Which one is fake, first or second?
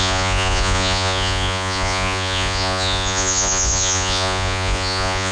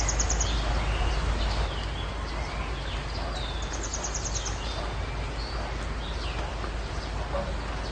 first